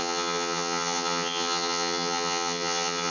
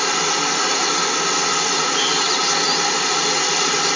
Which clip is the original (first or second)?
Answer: second